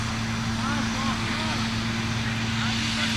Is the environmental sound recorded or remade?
recorded